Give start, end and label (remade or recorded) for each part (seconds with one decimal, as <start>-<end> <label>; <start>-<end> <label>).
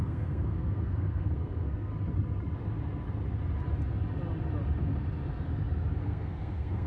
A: 0.0-1.9 remade; 1.9-6.0 recorded; 6.0-6.9 remade